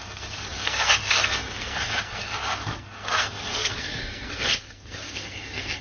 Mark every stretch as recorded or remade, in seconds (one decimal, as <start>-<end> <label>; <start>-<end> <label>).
0.0-5.8 remade